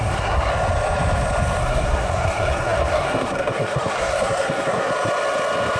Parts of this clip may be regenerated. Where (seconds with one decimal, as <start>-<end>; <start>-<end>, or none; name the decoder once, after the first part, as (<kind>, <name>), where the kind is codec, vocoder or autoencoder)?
0.0-0.5 (codec, SNAC); 1.6-4.9